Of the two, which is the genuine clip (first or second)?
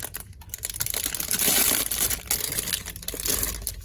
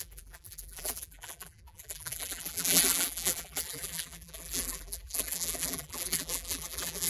first